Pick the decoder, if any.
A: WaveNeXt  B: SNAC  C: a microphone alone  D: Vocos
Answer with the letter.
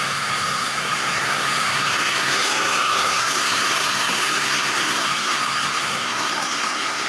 B